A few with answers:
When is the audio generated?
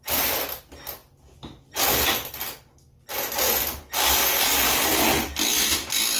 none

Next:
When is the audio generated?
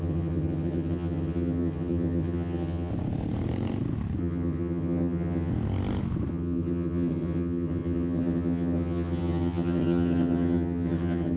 0.0-2.9 (vocoder, HiFi-GAN); 4.2-5.5; 6.3-11.4